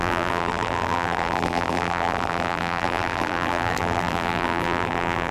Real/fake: fake